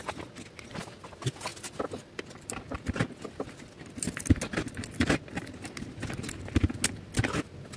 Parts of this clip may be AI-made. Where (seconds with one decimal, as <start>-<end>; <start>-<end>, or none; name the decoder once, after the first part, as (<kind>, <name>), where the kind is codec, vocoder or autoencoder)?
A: none